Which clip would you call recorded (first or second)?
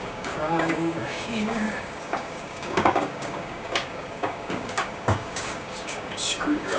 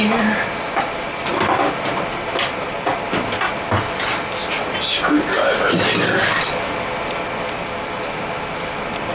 second